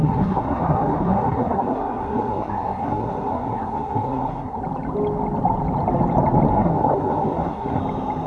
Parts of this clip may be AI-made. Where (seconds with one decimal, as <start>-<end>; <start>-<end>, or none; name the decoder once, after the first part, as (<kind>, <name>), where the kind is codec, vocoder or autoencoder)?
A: 0.0-4.6 (codec, SNAC); 6.5-7.8